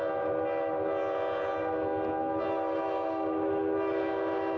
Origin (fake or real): real